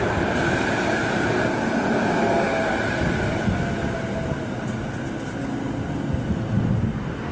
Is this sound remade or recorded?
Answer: recorded